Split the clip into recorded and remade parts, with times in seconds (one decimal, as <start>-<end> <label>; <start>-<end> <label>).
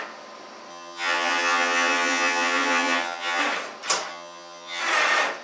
0.0-0.7 recorded; 0.7-3.4 remade; 3.4-4.1 recorded; 4.1-4.8 remade; 4.8-5.4 recorded